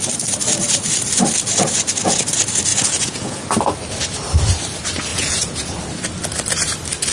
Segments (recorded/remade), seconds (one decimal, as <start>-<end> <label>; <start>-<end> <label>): 0.0-2.7 recorded; 2.7-3.5 remade; 3.5-5.1 recorded; 5.1-5.8 remade; 5.8-7.1 recorded